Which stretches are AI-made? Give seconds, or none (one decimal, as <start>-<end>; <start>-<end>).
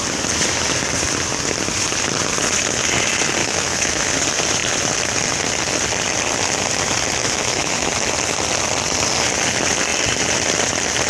3.4-4.1; 7.2-7.9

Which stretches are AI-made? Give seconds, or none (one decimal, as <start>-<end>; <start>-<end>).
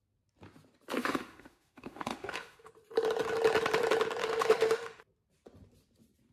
1.0-2.7; 4.2-5.0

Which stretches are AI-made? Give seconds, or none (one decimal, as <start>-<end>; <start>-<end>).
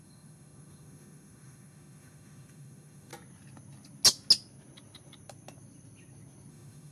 0.0-3.1; 6.5-6.9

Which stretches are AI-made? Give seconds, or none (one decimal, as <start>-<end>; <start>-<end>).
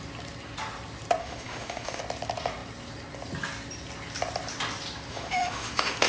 1.2-2.0; 5.1-6.1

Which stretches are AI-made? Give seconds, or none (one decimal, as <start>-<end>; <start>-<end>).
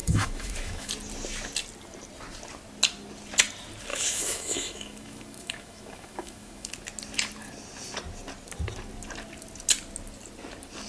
0.0-0.9; 3.9-6.7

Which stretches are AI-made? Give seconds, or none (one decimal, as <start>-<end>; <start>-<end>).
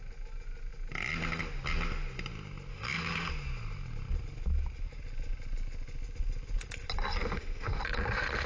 2.7-3.3; 7.2-7.8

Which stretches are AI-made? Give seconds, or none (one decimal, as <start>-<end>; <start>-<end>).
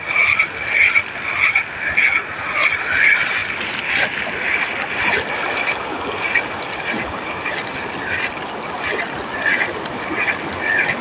none